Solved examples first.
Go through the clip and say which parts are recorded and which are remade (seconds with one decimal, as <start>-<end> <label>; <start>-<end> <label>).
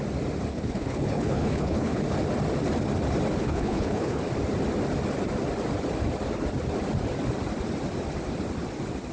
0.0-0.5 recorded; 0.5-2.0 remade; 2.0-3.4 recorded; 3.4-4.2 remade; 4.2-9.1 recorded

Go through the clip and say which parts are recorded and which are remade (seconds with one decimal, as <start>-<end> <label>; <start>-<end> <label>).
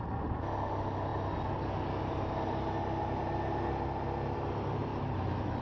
0.0-4.9 recorded; 4.9-5.6 remade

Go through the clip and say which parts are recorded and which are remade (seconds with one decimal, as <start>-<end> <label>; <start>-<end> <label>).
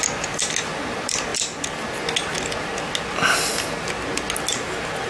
0.0-5.1 recorded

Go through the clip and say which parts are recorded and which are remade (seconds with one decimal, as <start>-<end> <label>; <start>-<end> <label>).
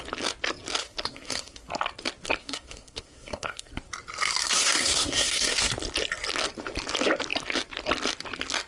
0.0-0.8 recorded; 0.8-1.7 remade; 1.7-2.4 recorded; 2.4-3.7 remade; 3.7-4.4 recorded; 4.4-5.7 remade; 5.7-8.7 recorded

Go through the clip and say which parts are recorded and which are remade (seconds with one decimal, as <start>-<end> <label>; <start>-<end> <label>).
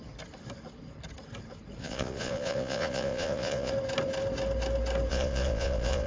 0.0-1.8 recorded; 1.8-3.7 remade; 3.7-5.1 recorded; 5.1-6.1 remade